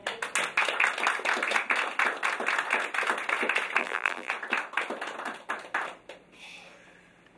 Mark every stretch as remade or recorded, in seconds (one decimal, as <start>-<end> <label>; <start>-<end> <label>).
0.0-3.8 recorded; 3.8-4.3 remade; 4.3-7.4 recorded